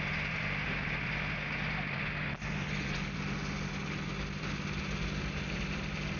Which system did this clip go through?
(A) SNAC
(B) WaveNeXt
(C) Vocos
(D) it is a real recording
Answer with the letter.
D